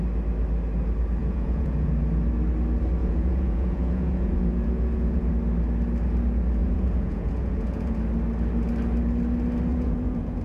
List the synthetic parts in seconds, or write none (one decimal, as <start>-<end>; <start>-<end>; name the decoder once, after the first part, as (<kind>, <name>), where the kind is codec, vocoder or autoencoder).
1.2-1.9 (vocoder, Vocos); 3.0-5.3; 6.6-8.0; 9.7-10.4